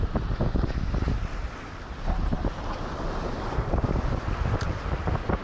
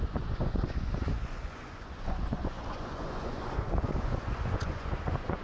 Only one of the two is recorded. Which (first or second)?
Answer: first